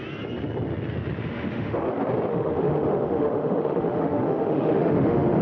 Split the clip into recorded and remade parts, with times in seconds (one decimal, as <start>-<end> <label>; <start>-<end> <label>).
0.0-1.2 recorded; 1.2-1.9 remade; 1.9-2.3 recorded; 2.3-5.4 remade